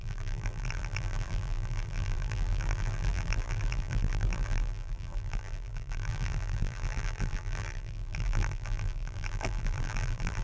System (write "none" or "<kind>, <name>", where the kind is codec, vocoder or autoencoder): vocoder, BigVGAN v2